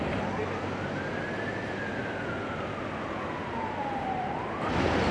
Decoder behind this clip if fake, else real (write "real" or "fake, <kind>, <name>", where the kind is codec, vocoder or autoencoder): real